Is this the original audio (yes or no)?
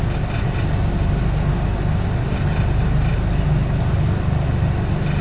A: yes